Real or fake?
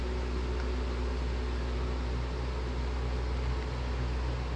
real